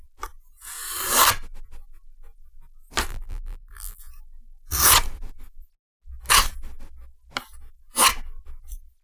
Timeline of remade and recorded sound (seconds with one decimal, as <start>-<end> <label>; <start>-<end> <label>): 0.0-3.1 recorded; 3.1-4.0 remade; 4.0-9.0 recorded